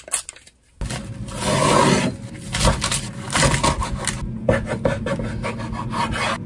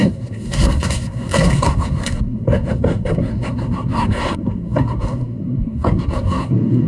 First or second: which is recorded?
first